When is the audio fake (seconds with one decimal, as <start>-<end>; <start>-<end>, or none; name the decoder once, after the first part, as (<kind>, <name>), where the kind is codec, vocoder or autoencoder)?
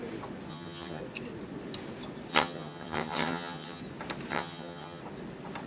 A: 0.5-1.0 (vocoder, HiFi-GAN); 2.3-3.8; 4.3-5.0